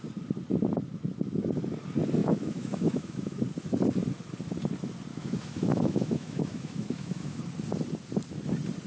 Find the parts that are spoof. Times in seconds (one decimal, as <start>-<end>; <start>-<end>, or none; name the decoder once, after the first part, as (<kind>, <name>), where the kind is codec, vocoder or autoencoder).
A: 2.2-3.4 (autoencoder, DAC-VAE); 5.1-7.4